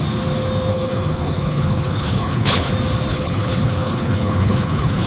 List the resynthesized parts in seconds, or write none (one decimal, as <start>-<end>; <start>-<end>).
0.7-2.7; 3.1-5.1